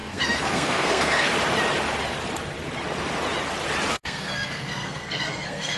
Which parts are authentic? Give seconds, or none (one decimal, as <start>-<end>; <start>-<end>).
1.3-3.9